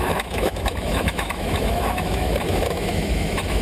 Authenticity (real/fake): fake